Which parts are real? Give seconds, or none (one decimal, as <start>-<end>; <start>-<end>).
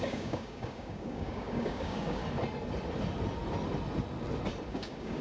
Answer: 2.2-4.7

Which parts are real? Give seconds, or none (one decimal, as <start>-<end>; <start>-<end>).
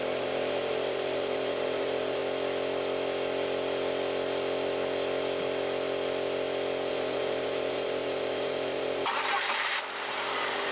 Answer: 2.2-6.9